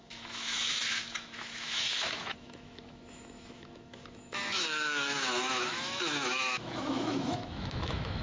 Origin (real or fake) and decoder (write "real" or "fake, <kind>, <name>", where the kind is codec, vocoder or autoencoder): fake, autoencoder, DAC-VAE